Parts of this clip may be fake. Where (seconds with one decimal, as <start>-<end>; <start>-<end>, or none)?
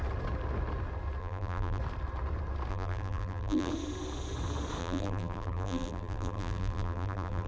1.2-1.8; 2.7-3.7; 4.8-7.5